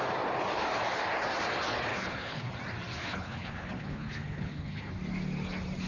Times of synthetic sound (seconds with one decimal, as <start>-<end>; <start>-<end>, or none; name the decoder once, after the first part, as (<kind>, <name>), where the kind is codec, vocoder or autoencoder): 1.9-2.5 (codec, HILCodec); 3.0-4.9